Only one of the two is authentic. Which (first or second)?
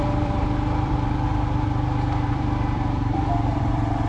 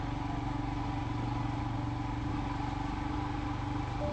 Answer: second